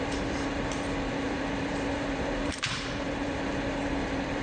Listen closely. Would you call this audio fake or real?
fake